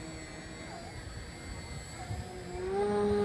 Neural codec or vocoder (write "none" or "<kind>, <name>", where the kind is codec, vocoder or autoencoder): none